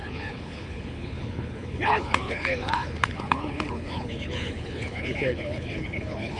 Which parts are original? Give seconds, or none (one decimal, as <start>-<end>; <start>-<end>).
none

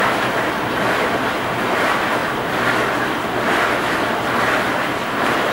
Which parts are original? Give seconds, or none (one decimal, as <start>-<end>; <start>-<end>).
0.0-5.5

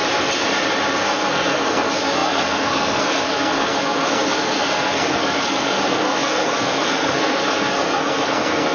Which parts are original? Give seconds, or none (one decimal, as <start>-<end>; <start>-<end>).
0.0-1.0